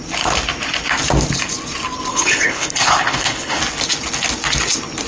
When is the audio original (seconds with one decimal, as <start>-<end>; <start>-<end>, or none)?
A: 0.0-2.1; 3.6-5.1